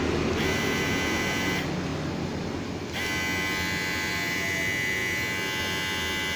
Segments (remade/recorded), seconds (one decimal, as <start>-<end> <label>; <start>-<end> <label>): 0.0-6.4 recorded